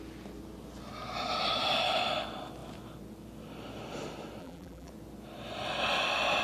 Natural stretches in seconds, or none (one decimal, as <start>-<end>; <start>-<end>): 0.0-4.4; 4.9-6.4